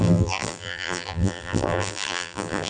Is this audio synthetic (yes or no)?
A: yes